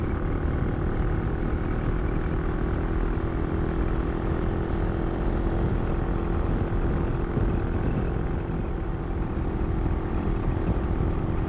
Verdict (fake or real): real